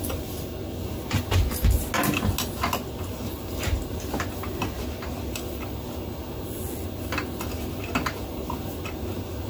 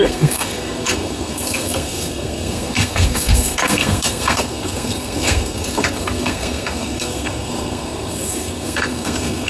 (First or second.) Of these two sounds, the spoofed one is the second